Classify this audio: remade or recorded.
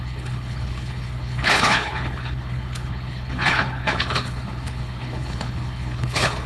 remade